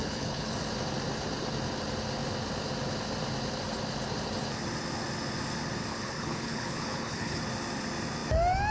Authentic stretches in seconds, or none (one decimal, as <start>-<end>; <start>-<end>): 0.5-5.9; 7.4-8.7

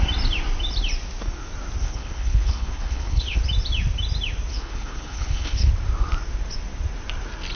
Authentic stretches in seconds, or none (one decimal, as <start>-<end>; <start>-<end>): 0.0-1.8; 3.4-4.5; 5.7-7.5

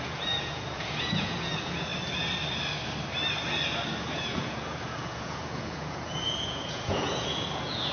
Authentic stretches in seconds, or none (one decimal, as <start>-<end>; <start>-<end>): 1.9-4.0